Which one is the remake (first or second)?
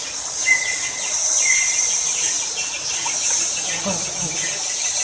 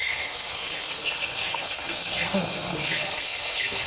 second